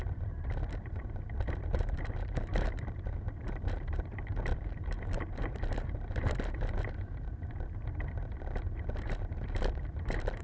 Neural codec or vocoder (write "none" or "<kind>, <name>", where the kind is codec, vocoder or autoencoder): vocoder, BigVGAN v2